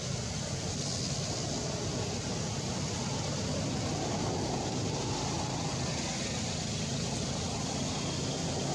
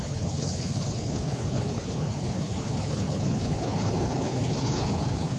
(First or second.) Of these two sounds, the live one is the first